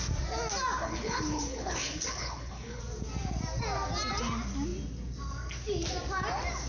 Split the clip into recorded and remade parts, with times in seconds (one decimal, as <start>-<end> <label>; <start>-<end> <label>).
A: 0.0-0.8 recorded; 0.8-2.8 remade; 2.8-6.7 recorded